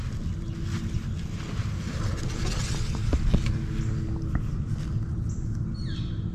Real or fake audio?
real